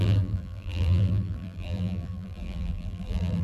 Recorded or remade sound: remade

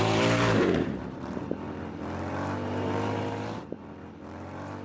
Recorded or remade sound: remade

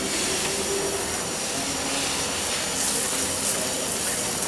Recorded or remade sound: recorded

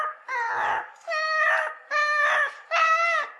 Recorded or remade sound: recorded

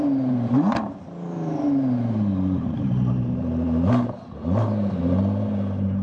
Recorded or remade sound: remade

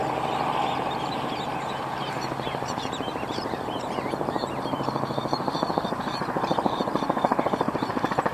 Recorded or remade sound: remade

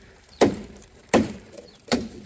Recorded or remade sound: remade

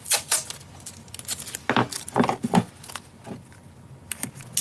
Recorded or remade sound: recorded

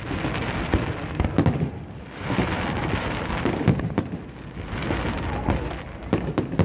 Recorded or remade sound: remade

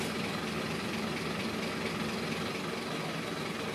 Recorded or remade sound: recorded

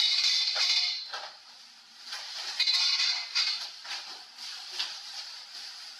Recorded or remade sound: recorded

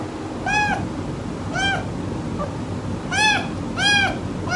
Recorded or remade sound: recorded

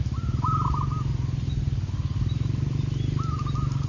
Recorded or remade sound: recorded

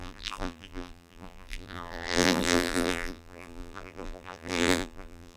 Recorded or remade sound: remade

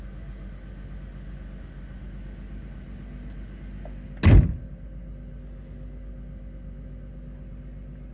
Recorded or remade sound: recorded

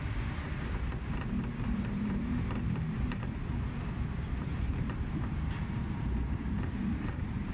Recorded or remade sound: remade